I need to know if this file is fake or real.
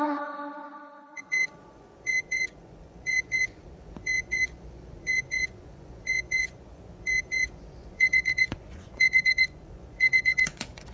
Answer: fake